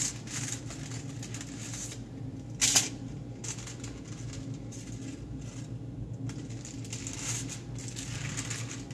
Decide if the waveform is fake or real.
real